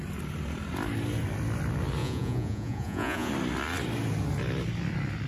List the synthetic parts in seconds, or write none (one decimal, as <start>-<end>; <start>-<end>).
2.0-3.3